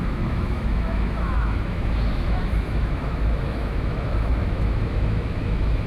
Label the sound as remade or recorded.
remade